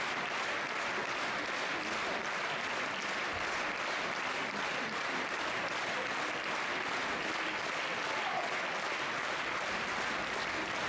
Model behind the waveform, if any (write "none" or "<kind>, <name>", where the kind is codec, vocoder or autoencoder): none